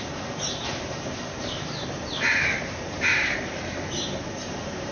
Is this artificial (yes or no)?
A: yes